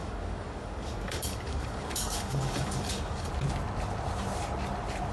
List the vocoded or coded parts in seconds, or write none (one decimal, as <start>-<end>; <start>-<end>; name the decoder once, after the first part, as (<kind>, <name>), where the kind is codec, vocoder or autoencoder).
0.0-3.3 (codec, DAC)